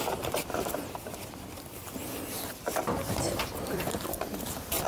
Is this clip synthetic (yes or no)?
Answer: yes